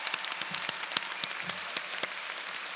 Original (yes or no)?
yes